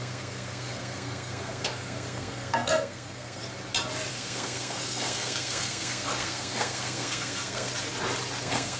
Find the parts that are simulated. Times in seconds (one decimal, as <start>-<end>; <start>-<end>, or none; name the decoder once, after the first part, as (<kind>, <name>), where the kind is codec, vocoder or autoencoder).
0.0-3.4 (codec, SNAC); 4.1-7.7; 8.4-8.8